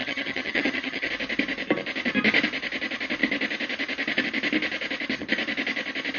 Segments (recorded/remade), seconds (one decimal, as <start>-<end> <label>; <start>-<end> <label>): 0.0-1.1 remade; 1.1-6.2 recorded